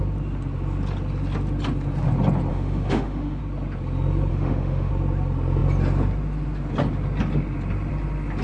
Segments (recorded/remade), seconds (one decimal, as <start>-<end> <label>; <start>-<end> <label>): 0.0-2.5 recorded; 2.5-3.4 remade; 3.4-4.3 recorded; 4.3-4.9 remade; 4.9-8.4 recorded